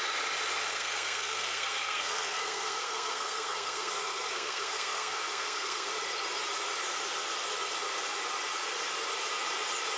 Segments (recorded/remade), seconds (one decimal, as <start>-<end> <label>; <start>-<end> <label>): 0.0-0.7 recorded; 0.7-5.9 remade; 5.9-10.0 recorded